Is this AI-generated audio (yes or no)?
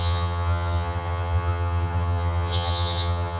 yes